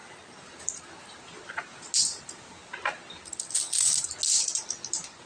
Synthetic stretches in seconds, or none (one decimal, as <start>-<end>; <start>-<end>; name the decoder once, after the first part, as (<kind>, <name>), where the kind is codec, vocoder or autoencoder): none